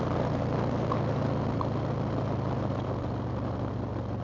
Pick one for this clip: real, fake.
real